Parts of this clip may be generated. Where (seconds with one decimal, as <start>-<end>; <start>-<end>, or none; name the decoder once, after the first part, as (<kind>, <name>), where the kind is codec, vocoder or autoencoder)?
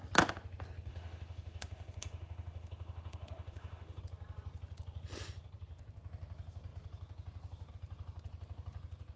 0.9-4.0 (autoencoder, DAC-VAE)